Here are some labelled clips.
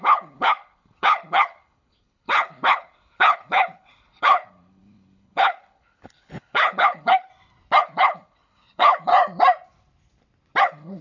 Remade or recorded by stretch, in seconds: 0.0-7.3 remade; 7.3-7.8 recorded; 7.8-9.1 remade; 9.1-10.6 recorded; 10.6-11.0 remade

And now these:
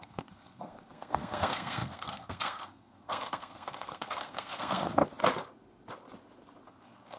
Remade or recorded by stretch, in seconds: 0.0-5.0 remade; 5.0-6.7 recorded; 6.7-7.2 remade

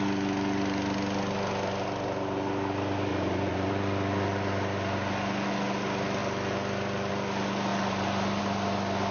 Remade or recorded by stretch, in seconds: 0.0-3.1 recorded; 3.1-3.7 remade; 3.7-9.1 recorded

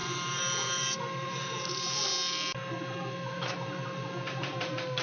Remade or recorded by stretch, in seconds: 0.0-2.1 remade; 2.1-2.7 recorded; 2.7-5.0 remade

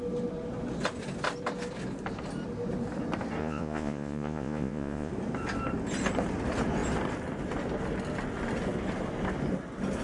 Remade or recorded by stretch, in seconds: 0.0-3.4 recorded; 3.4-5.1 remade; 5.1-10.0 recorded